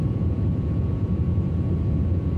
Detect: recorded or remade remade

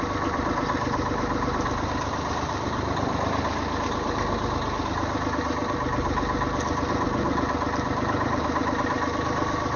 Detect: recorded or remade recorded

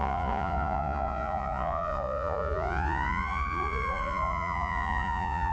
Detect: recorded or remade remade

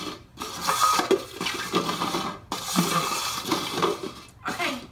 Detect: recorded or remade recorded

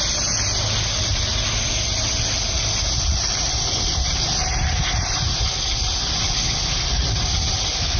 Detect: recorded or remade recorded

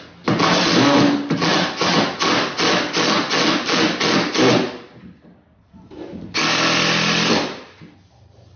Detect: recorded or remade recorded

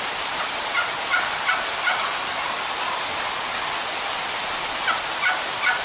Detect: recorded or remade recorded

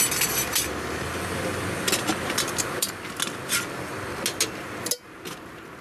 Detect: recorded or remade recorded